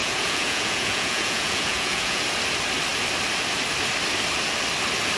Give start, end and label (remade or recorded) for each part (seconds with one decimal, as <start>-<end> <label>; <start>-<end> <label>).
0.0-2.2 remade; 2.2-5.2 recorded